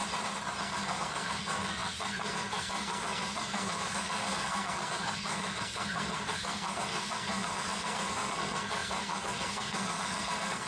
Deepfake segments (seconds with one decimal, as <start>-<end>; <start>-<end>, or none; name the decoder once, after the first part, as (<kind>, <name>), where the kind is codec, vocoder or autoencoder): 0.6-10.7 (codec, SNAC)